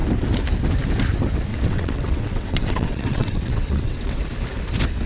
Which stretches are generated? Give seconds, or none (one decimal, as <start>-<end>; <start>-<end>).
1.5-4.2